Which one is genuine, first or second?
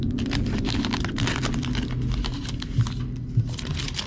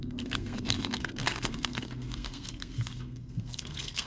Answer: first